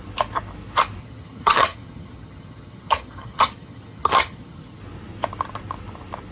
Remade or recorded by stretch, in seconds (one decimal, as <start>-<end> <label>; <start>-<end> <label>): 0.0-1.0 recorded; 1.0-4.8 remade; 4.8-6.3 recorded